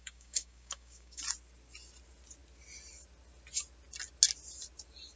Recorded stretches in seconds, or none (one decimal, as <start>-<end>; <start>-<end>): 1.2-5.2

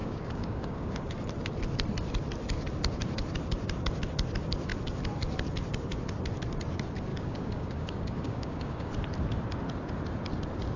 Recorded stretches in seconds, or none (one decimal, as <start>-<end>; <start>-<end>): 1.1-7.1; 8.9-10.8

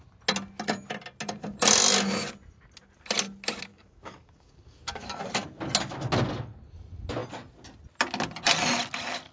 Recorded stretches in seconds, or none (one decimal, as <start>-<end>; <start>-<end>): 0.0-3.7; 5.2-9.3

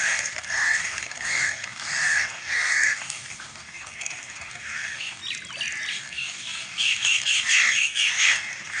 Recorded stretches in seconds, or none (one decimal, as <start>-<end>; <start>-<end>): 5.2-5.9

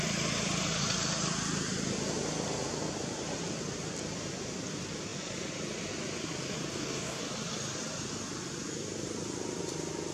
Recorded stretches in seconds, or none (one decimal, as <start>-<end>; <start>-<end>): 0.0-6.7; 7.2-10.1

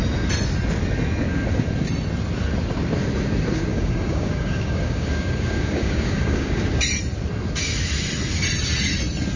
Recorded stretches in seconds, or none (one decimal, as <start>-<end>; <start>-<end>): 0.0-3.7; 6.6-9.4